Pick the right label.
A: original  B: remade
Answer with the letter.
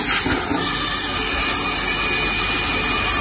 A